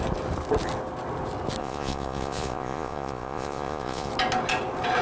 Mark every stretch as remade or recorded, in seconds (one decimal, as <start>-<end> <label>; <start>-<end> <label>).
0.0-1.6 recorded; 1.6-4.1 remade; 4.1-5.0 recorded